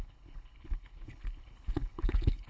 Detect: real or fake fake